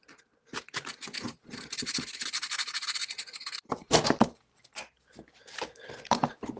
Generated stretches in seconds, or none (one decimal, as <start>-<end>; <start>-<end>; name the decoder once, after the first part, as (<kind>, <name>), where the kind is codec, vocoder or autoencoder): 3.0-6.0 (vocoder, BigVGAN v2)